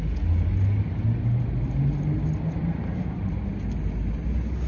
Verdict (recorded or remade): recorded